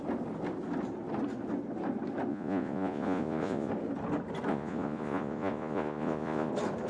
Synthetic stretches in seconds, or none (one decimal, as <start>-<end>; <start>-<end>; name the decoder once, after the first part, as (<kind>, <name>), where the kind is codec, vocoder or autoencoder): 2.3-3.7 (vocoder, Vocos); 4.5-6.5

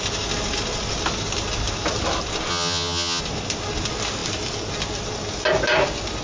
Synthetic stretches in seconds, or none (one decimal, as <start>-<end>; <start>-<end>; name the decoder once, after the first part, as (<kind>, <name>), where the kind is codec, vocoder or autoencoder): 2.5-3.2 (vocoder, HiFi-GAN)